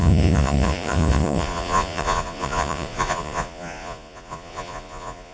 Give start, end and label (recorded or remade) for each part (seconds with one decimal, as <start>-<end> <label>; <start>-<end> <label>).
0.0-5.3 remade